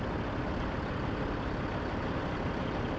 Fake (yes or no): no